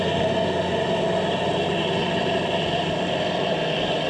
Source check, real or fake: real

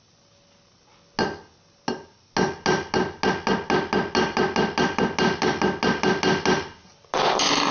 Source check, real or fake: real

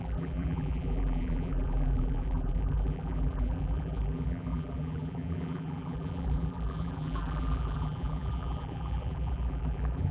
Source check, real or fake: fake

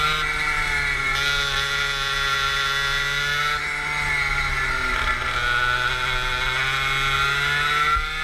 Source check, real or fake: real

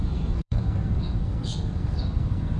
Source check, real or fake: fake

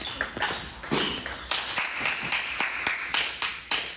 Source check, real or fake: real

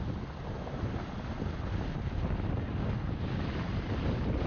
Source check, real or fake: real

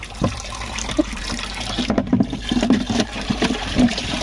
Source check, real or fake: fake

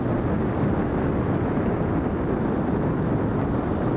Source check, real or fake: real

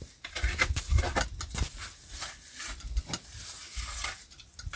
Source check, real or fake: real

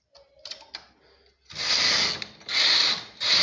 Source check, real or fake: real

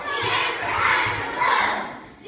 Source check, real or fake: real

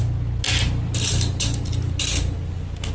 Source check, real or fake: real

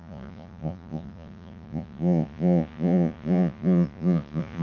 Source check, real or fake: fake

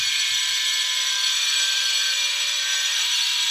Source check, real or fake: fake